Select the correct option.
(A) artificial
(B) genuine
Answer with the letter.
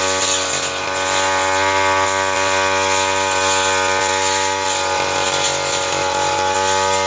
B